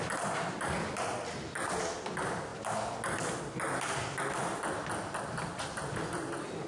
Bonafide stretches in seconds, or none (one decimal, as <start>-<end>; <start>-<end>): 0.0-6.7